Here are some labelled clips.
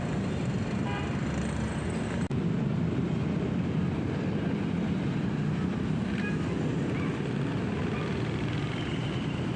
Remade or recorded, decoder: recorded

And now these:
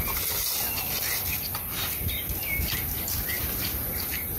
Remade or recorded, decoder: recorded